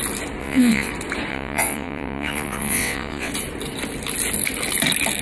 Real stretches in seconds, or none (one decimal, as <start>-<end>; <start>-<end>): 0.0-0.4; 0.9-1.3; 3.3-5.2